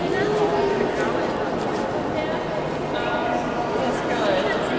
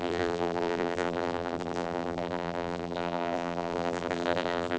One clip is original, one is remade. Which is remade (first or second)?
second